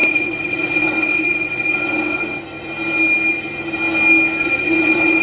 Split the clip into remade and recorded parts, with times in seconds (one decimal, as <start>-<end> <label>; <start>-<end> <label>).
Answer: 0.0-2.4 remade; 2.4-4.4 recorded; 4.4-5.2 remade